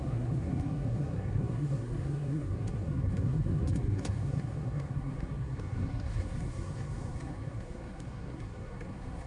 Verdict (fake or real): fake